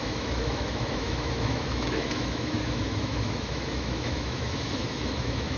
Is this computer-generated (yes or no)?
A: yes